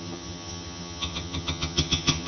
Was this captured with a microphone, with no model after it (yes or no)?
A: no